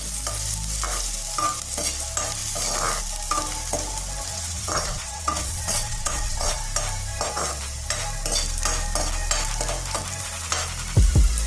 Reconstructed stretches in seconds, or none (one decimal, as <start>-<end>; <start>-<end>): 4.3-6.6